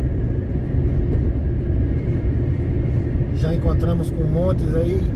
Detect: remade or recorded recorded